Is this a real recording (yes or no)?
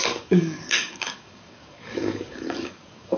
no